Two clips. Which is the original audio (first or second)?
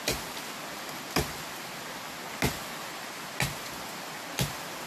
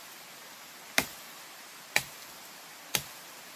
first